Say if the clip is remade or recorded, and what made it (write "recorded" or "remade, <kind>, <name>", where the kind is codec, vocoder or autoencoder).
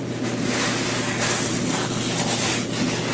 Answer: recorded